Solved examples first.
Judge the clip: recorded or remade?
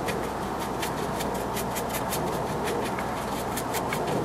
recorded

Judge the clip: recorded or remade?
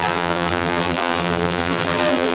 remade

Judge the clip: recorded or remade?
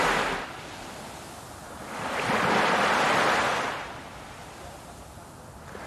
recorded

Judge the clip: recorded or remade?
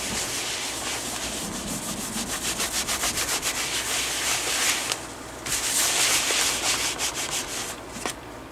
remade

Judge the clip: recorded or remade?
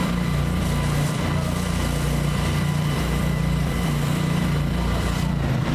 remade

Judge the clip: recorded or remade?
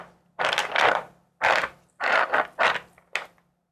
recorded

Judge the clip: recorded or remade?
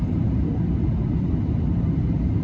remade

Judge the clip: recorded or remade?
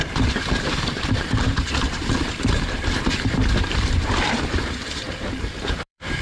remade